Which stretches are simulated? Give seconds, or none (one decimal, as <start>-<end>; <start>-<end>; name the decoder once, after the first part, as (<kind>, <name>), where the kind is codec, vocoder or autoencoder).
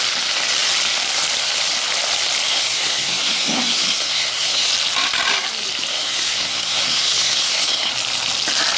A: 2.5-4.7 (codec, SNAC); 5.9-7.9